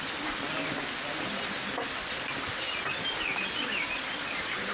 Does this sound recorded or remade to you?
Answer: recorded